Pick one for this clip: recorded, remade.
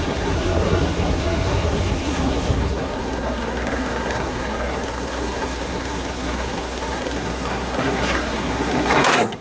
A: remade